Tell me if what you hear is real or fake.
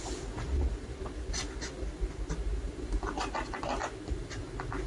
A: real